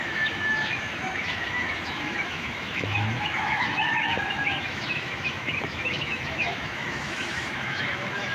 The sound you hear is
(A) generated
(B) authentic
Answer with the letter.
A